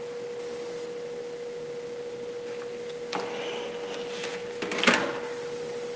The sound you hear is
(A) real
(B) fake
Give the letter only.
A